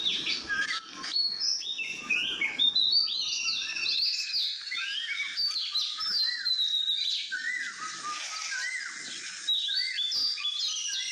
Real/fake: real